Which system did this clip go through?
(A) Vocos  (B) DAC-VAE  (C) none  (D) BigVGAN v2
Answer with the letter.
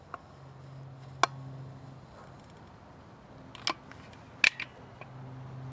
C